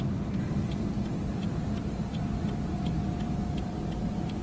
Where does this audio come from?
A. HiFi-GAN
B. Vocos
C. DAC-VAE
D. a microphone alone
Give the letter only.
D